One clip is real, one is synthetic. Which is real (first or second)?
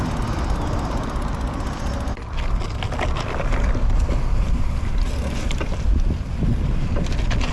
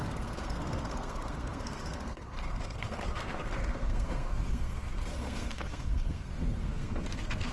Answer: first